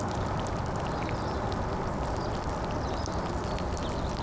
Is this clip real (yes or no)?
yes